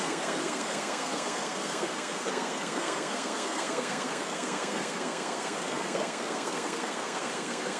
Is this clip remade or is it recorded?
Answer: remade